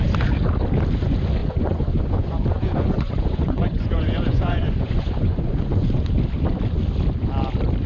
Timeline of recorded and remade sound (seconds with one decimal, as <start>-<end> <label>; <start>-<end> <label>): 0.0-1.4 recorded; 1.4-6.1 remade; 6.1-7.9 recorded